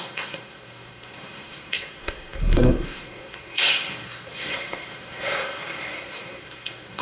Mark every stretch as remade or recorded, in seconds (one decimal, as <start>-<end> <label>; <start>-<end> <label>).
0.0-7.0 remade